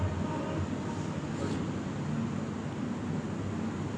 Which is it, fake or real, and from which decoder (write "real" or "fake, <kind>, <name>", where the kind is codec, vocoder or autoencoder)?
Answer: real